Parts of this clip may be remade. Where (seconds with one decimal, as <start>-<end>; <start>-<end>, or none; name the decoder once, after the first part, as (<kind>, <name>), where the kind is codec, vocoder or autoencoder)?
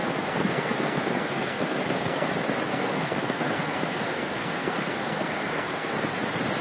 0.0-2.3 (codec, SNAC); 2.7-5.9